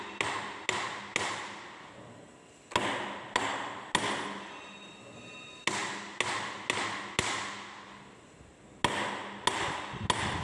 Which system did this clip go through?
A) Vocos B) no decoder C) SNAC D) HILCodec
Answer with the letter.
B